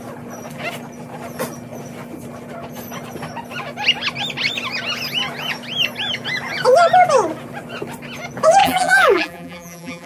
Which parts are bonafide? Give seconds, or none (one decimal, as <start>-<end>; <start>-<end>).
0.0-8.6